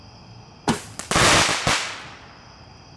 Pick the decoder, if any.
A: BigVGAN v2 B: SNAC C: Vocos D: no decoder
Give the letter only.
D